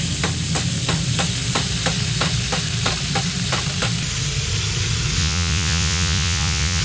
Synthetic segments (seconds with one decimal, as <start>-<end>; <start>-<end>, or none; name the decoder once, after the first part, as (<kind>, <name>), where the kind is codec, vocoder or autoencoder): 5.2-6.8 (vocoder, Vocos)